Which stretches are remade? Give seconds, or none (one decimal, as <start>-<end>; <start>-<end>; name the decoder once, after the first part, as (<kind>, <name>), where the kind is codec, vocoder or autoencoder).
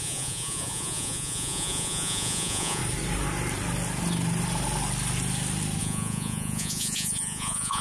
0.0-2.8 (vocoder, Vocos); 5.8-7.8